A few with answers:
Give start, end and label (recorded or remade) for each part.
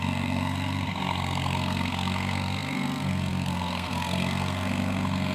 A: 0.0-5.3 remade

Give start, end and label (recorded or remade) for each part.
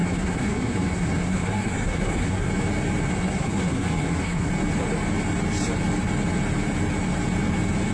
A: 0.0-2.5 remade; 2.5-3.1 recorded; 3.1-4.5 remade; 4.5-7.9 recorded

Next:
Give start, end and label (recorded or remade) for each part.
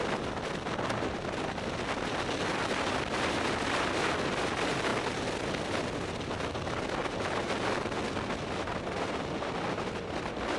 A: 0.0-10.6 recorded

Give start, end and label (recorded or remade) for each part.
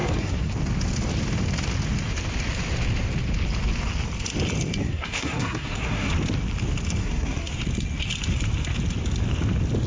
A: 0.0-0.5 remade; 0.5-4.8 recorded; 4.8-6.1 remade; 6.1-7.0 recorded; 7.0-7.5 remade; 7.5-9.9 recorded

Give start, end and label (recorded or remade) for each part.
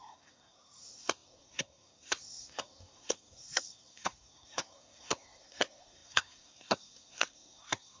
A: 0.0-8.0 remade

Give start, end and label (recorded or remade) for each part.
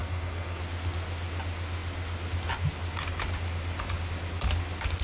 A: 0.0-0.6 remade; 0.6-5.0 recorded